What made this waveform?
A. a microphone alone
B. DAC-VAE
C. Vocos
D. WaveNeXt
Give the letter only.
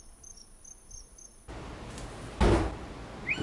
A